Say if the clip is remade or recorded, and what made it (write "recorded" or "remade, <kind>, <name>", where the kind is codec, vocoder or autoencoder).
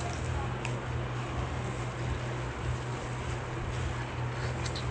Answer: recorded